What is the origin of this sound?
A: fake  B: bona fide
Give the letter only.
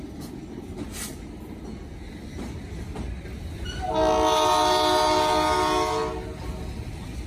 B